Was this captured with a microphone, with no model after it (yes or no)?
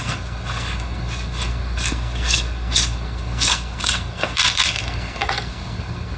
no